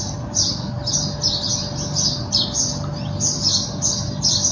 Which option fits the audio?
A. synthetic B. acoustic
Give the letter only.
B